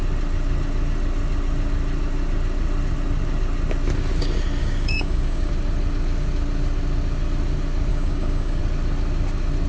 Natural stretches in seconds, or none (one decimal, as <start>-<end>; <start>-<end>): 0.0-4.6; 5.5-7.9; 8.6-9.7